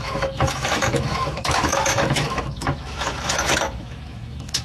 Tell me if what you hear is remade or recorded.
remade